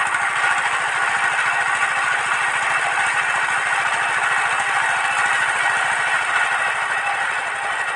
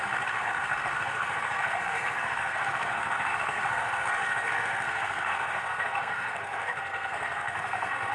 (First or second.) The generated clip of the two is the second